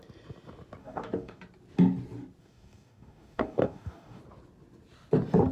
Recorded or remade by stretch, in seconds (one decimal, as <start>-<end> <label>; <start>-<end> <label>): 0.0-0.8 recorded; 0.8-1.4 remade; 1.4-2.4 recorded; 2.4-4.2 remade; 4.2-5.5 recorded